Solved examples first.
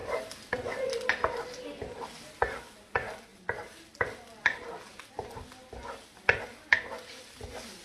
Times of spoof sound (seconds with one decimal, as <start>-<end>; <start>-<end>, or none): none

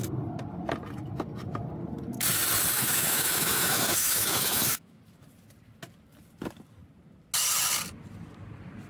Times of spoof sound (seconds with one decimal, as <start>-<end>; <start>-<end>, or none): 2.7-5.0

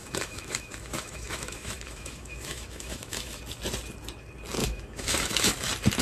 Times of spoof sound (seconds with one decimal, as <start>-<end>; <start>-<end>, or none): 0.0-3.4; 4.6-5.5

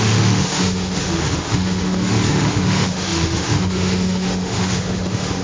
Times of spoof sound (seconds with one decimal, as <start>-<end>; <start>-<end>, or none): 0.0-5.4